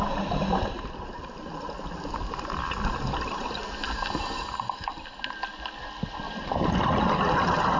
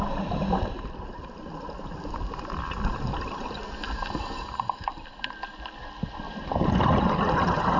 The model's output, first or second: second